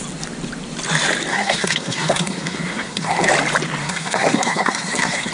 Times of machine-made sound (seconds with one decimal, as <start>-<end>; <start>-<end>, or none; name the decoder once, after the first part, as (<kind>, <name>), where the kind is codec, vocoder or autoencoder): 1.3-3.3 (codec, SNAC); 3.8-5.3